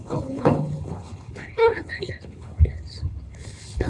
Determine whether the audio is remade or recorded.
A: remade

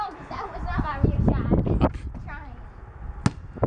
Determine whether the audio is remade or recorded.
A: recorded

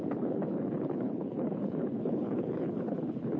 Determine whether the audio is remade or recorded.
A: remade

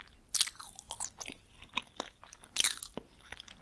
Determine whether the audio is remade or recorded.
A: recorded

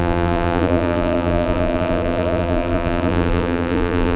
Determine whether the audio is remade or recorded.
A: remade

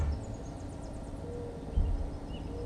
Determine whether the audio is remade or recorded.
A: recorded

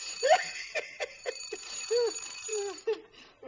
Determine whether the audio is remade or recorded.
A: remade